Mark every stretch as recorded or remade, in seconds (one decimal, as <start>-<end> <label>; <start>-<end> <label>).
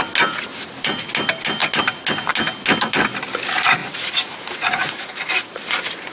0.0-3.8 recorded; 3.8-5.4 remade; 5.4-6.1 recorded